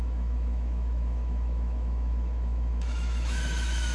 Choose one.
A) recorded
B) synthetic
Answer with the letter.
B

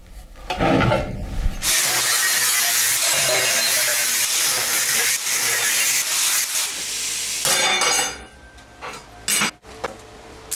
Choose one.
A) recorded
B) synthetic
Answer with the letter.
A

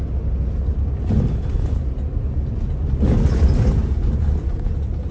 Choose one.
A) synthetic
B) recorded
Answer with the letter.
B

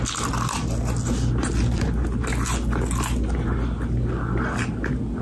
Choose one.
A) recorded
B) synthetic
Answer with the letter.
A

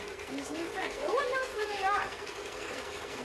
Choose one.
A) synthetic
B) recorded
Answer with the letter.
A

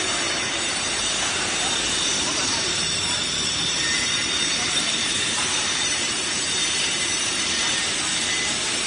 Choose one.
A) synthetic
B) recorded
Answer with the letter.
A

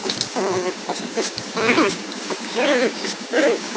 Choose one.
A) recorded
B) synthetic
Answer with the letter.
B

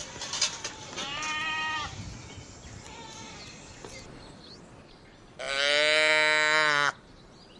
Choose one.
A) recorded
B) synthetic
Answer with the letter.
A